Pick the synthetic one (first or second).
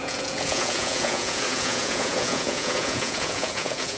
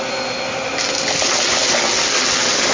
first